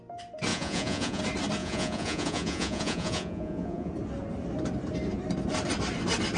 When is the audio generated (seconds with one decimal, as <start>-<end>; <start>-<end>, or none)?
0.5-1.2; 1.6-3.9